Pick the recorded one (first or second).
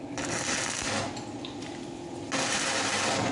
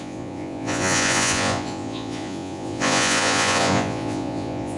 first